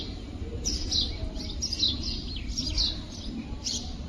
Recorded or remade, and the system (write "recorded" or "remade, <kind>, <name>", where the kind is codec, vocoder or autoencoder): recorded